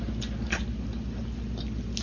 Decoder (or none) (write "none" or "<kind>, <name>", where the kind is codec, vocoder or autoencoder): none